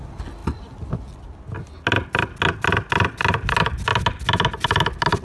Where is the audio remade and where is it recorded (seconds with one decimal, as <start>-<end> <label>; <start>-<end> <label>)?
0.0-5.2 recorded